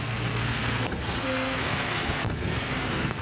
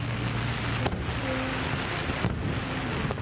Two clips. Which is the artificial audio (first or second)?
first